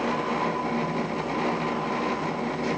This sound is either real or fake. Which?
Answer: real